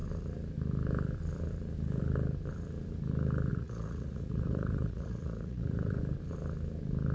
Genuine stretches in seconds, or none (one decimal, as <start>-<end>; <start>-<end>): 0.0-3.5; 6.0-7.1